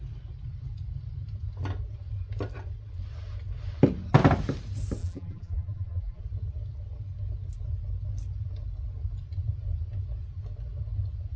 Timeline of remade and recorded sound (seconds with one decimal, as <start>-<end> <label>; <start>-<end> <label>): 0.0-5.0 recorded; 5.0-6.2 remade; 6.2-11.4 recorded